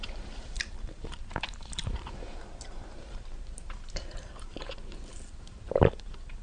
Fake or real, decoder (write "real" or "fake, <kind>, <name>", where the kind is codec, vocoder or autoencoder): fake, vocoder, BigVGAN v2